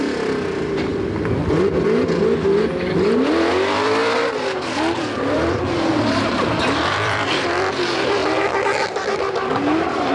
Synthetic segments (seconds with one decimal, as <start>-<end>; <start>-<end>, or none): 0.0-0.9; 3.5-8.2; 9.1-10.1